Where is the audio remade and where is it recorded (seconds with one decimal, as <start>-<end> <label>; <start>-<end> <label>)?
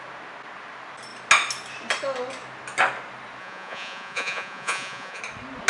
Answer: 0.0-3.4 recorded; 3.4-5.2 remade; 5.2-5.7 recorded